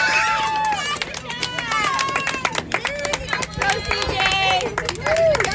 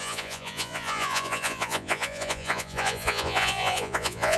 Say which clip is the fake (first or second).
second